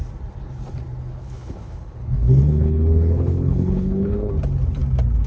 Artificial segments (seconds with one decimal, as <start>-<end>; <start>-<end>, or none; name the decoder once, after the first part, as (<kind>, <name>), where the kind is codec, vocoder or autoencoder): 1.1-4.3 (codec, HILCodec)